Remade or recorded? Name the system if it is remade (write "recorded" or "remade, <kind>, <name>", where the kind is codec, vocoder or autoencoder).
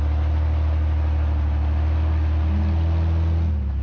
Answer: recorded